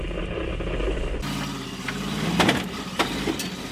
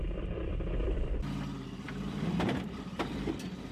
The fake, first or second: second